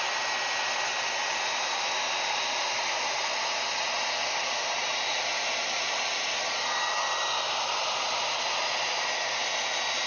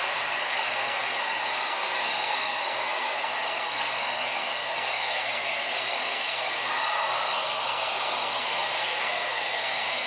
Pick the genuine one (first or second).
first